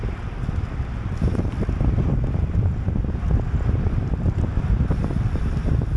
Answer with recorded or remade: remade